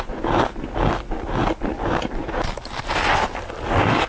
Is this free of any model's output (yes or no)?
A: yes